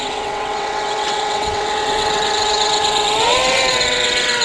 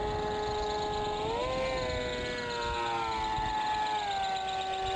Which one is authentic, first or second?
second